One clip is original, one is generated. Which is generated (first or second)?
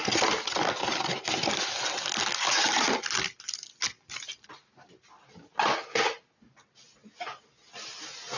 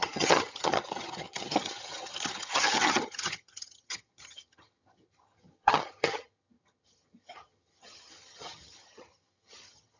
second